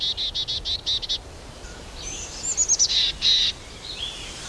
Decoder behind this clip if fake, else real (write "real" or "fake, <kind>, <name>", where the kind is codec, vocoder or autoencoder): real